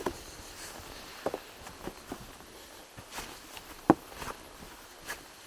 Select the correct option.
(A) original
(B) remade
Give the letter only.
A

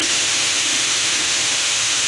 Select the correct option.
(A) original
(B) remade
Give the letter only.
B